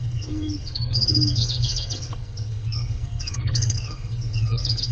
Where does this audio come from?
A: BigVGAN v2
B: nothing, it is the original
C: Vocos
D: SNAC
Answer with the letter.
D